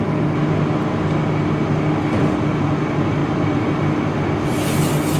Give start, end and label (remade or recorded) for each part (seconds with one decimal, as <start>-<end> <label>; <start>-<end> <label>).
0.0-5.2 recorded